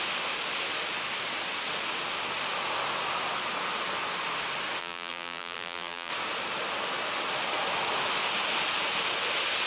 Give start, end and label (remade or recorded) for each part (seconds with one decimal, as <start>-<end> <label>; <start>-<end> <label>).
0.0-4.8 recorded; 4.8-6.1 remade; 6.1-9.7 recorded